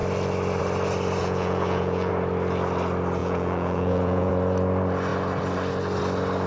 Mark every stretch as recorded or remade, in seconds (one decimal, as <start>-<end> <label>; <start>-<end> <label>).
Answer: 0.0-1.2 recorded; 1.2-2.1 remade; 2.1-3.2 recorded; 3.2-4.3 remade; 4.3-6.5 recorded